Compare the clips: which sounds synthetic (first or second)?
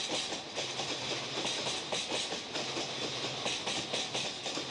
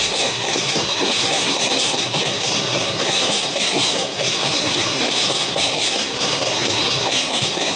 second